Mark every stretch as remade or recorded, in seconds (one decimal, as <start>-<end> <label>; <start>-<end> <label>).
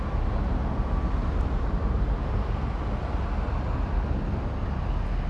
0.0-1.2 recorded; 1.2-2.9 remade; 2.9-5.3 recorded